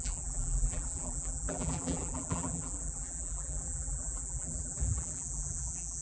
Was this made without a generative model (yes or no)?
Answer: no